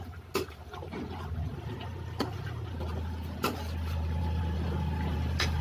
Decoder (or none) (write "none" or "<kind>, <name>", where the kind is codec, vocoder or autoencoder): none